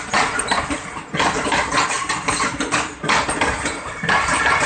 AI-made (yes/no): no